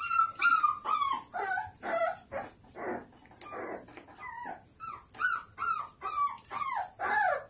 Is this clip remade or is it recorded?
recorded